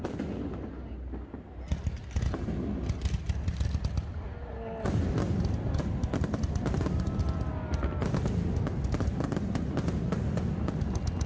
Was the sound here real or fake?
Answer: real